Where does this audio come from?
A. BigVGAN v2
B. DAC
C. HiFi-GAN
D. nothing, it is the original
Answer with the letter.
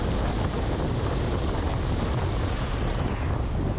D